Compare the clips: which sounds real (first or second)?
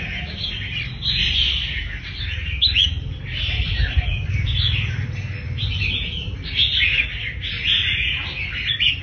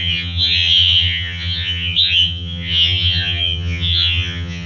first